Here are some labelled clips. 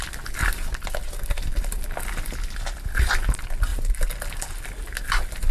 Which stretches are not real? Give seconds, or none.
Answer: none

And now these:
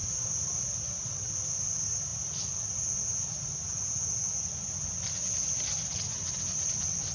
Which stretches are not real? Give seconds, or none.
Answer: none

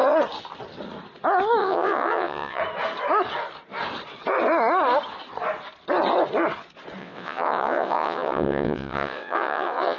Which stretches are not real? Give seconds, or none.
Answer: 1.6-2.6 (vocoder, WaveNeXt); 7.0-10.0